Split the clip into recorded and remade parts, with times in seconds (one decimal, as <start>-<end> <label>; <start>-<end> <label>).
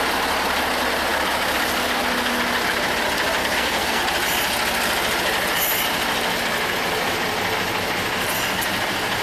0.0-3.4 recorded; 3.4-4.0 remade; 4.0-9.2 recorded